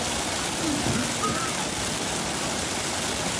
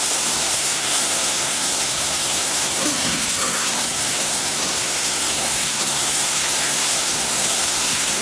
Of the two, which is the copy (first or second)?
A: second